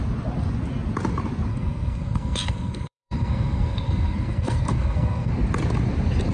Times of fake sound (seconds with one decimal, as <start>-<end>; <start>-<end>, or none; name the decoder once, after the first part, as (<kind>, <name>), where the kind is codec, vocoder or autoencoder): 1.5-5.3 (codec, SNAC)